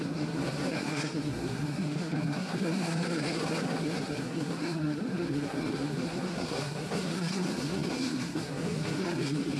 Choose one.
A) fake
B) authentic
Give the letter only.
A